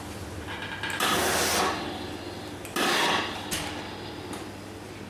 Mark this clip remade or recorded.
recorded